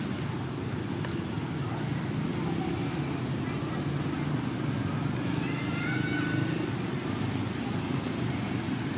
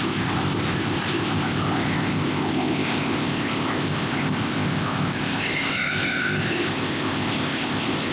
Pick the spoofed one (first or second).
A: second